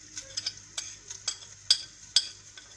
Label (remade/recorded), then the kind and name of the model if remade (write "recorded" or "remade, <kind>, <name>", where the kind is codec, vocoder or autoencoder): recorded